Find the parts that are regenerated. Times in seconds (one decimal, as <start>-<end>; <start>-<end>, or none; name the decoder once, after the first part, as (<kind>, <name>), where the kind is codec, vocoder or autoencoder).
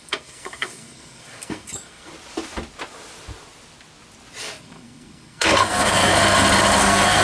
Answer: 0.0-2.1 (codec, SNAC); 4.4-6.1; 6.8-7.2